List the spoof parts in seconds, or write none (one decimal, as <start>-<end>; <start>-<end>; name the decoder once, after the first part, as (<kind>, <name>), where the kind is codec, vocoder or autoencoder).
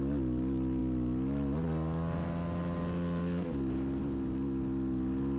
none